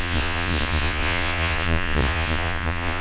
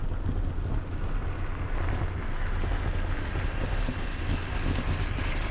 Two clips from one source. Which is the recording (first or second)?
second